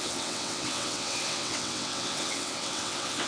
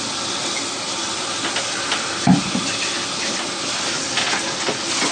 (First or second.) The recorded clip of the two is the second